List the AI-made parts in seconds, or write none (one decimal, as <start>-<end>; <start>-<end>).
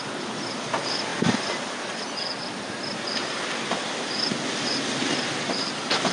none